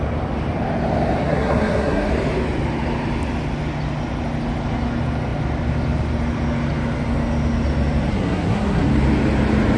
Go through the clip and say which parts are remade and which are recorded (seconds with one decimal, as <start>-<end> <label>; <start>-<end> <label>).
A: 0.0-1.2 recorded; 1.2-2.1 remade; 2.1-8.1 recorded; 8.1-8.9 remade; 8.9-9.8 recorded